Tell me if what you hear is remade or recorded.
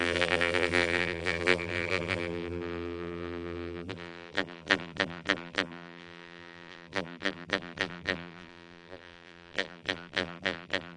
remade